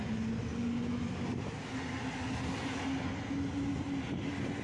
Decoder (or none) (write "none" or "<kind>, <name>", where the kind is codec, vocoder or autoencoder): none